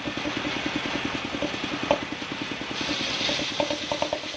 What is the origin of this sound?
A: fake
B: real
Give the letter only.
B